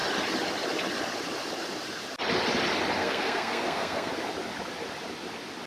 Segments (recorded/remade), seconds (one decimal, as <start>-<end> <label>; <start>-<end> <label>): 0.0-3.0 recorded; 3.0-4.1 remade; 4.1-5.7 recorded